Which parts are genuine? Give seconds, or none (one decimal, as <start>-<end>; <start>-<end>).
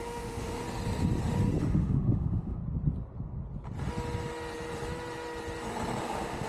0.6-1.6; 2.6-6.0